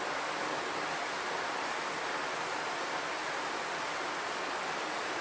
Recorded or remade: recorded